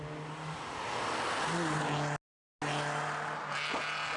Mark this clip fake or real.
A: real